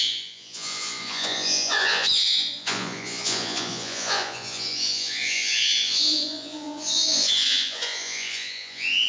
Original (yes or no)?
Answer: no